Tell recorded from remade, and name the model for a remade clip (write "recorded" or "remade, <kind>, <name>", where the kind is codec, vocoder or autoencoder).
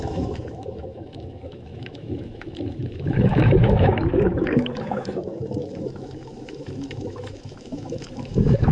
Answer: remade, autoencoder, DAC-VAE